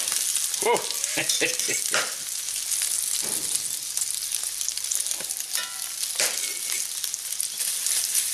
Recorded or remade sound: recorded